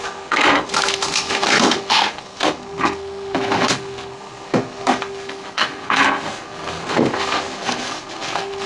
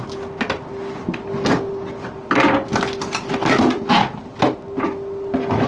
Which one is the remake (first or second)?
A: first